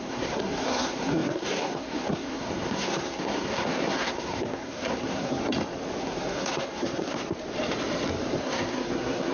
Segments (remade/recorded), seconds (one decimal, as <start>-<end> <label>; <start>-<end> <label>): 0.0-5.4 remade; 5.4-6.0 recorded; 6.0-7.2 remade; 7.2-8.4 recorded; 8.4-9.3 remade